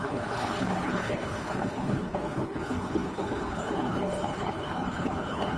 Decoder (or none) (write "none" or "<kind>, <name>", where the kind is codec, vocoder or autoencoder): codec, HILCodec